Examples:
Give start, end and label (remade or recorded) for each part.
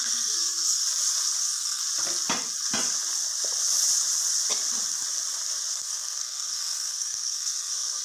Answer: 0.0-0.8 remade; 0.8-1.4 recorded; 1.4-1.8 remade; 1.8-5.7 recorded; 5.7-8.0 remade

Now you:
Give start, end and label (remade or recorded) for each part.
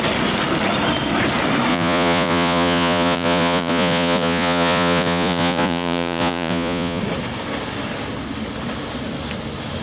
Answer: 0.0-1.7 recorded; 1.7-7.0 remade; 7.0-9.8 recorded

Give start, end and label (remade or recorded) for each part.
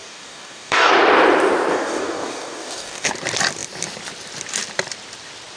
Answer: 0.0-0.9 remade; 0.9-1.7 recorded; 1.7-3.1 remade; 3.1-5.6 recorded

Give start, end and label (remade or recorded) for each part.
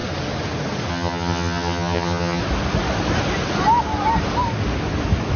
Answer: 0.0-0.9 recorded; 0.9-2.4 remade; 2.4-5.4 recorded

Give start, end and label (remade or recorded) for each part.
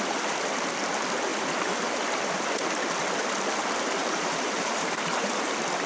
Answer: 0.0-4.0 recorded; 4.0-5.4 remade; 5.4-5.9 recorded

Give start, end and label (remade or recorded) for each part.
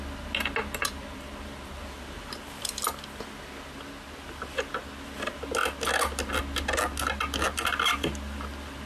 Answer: 0.0-0.8 recorded; 0.8-2.6 remade; 2.6-8.9 recorded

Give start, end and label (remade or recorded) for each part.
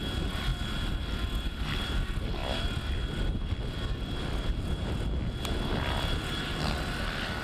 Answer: 0.0-7.4 recorded